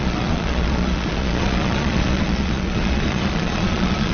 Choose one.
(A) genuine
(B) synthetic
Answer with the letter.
B